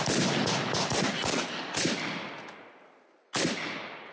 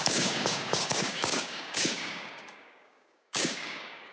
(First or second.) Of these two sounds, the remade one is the second